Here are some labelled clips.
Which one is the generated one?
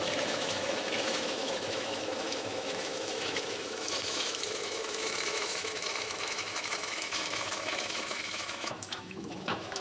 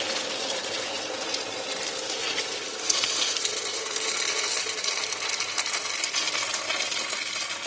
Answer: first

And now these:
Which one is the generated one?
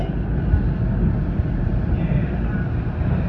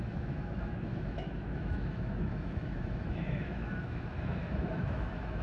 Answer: second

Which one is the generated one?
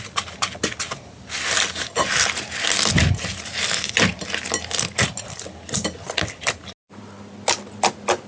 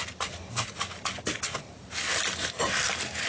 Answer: second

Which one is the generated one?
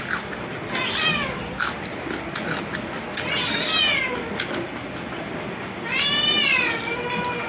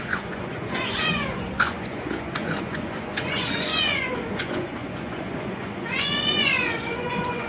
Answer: second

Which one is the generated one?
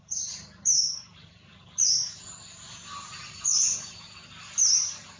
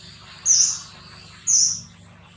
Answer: first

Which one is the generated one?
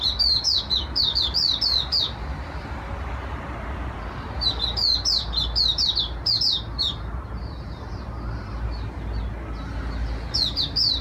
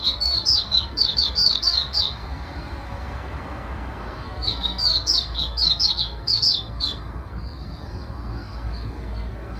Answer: second